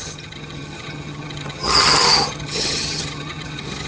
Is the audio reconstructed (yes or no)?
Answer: yes